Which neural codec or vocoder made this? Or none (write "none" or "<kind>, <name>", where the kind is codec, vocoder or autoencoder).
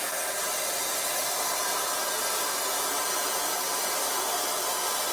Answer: none